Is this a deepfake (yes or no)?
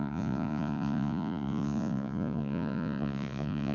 yes